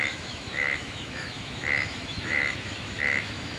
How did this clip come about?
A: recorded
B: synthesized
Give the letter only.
B